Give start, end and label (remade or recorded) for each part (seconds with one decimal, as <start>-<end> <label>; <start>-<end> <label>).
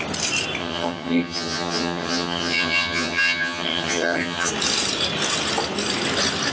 0.0-0.6 recorded; 0.6-4.5 remade; 4.5-6.5 recorded